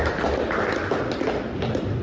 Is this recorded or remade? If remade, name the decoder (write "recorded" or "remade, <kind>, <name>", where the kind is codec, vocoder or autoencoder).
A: recorded